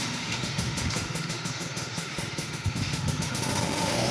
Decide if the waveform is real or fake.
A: fake